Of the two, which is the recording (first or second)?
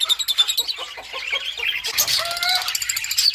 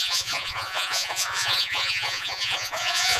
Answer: first